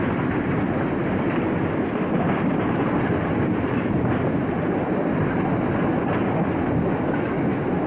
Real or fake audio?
real